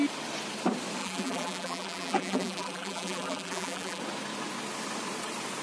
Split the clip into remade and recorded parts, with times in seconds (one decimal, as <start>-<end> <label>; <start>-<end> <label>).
0.0-1.0 recorded; 1.0-4.0 remade; 4.0-5.6 recorded

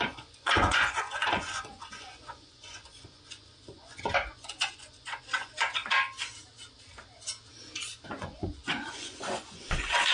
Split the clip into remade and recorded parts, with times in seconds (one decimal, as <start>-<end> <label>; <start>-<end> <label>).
0.0-5.8 remade; 5.8-8.1 recorded; 8.1-10.1 remade

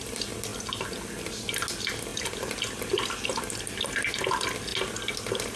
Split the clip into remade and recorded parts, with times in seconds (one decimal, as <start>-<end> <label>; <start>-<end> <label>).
0.0-5.6 recorded

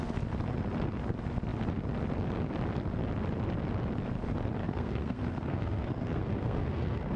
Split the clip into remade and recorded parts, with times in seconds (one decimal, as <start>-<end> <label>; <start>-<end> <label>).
0.0-4.6 recorded; 4.6-7.2 remade

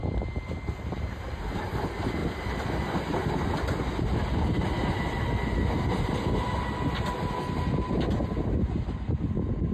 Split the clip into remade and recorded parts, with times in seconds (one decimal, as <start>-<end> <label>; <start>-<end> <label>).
0.0-2.2 recorded; 2.2-3.2 remade; 3.2-9.7 recorded